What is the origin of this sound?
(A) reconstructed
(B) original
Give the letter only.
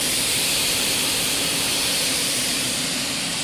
A